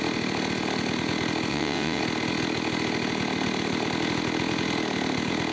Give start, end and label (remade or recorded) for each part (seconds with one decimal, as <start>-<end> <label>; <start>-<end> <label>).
0.0-1.5 recorded; 1.5-2.0 remade; 2.0-5.5 recorded